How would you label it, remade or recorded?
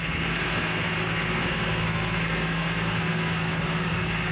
remade